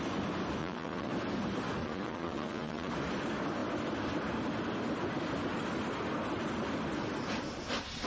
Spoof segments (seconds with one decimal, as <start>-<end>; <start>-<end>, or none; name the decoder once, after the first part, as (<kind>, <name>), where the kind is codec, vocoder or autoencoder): 0.6-1.1 (vocoder, Vocos); 1.8-2.9